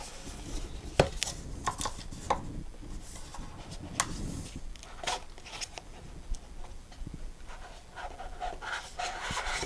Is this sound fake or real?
real